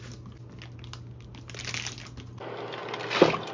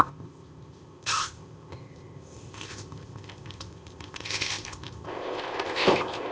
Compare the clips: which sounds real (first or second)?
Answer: first